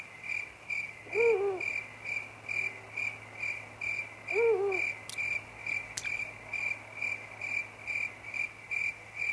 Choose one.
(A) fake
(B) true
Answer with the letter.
B